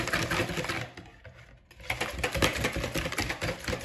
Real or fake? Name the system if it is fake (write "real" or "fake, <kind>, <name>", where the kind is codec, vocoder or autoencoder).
real